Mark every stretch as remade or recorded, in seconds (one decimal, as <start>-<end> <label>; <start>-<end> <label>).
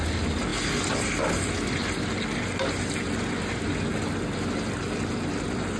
0.0-5.8 recorded